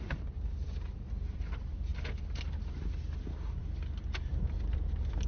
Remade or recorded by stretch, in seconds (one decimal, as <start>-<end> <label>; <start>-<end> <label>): 0.0-5.3 recorded